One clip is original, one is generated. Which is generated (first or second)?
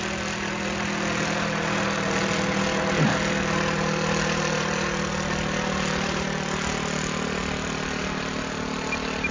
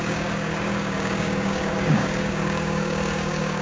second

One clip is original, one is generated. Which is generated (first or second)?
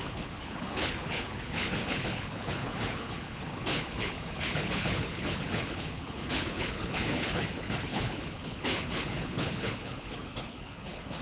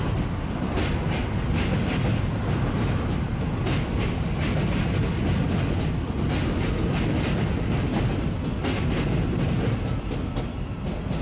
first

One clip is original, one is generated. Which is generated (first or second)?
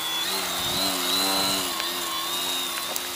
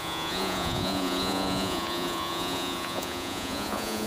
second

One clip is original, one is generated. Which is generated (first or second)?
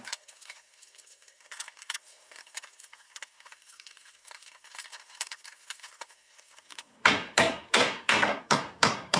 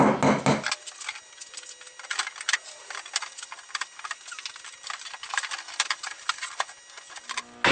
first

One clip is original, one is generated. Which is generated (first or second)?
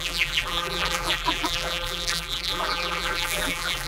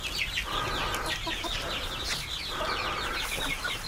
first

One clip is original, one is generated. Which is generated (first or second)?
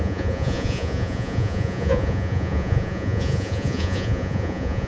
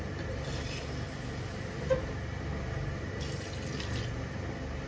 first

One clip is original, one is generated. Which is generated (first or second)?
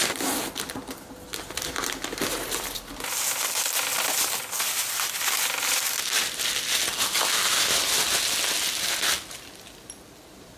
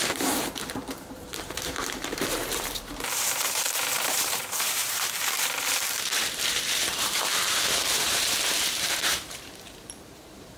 second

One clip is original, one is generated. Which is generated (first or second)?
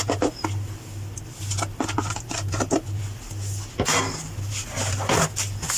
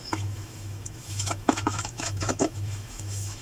second